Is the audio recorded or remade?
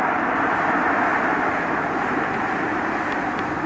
recorded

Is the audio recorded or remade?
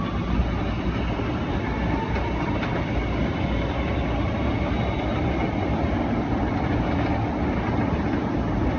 recorded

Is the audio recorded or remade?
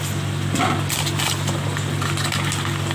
recorded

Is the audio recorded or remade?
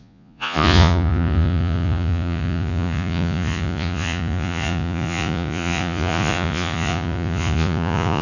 remade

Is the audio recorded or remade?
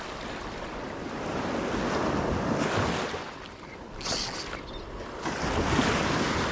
recorded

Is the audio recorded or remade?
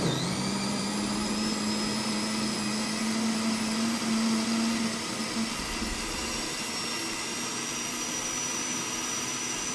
recorded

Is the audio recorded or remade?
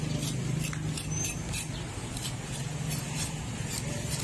recorded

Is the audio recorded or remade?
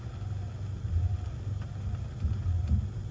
recorded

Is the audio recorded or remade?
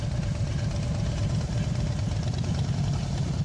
recorded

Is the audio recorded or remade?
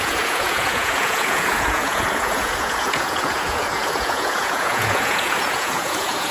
remade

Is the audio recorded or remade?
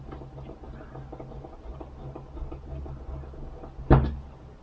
recorded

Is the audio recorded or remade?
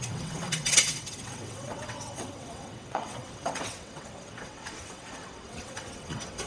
remade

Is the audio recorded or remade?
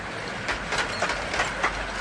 recorded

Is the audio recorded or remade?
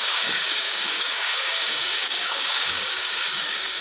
remade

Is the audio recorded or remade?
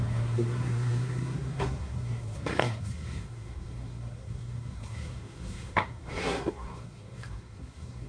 remade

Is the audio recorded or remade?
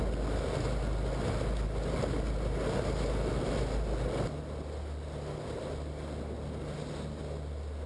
recorded